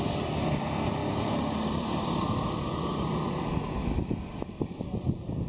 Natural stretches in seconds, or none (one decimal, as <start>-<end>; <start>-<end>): 0.0-5.5